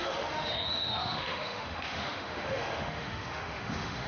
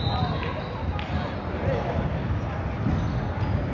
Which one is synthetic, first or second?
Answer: first